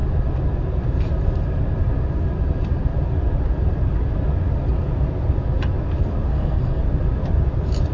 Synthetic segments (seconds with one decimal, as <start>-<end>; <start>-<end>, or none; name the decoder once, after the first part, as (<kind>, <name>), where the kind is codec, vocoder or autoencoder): 6.3-6.8 (codec, SNAC)